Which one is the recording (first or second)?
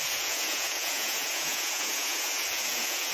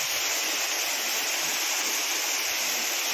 second